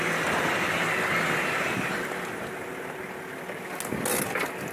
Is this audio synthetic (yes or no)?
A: no